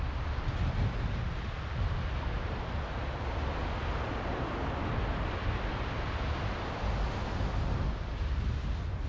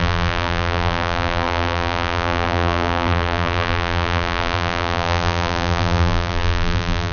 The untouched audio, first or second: first